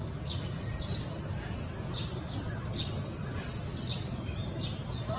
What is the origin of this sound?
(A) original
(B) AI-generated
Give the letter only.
A